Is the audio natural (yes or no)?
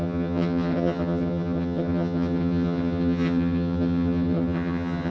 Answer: no